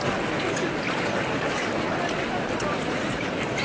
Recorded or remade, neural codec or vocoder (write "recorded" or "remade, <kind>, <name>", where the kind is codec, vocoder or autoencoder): recorded